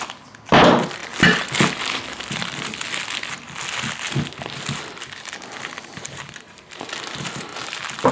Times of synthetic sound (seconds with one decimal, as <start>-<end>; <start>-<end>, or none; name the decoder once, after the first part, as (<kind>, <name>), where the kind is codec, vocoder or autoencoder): none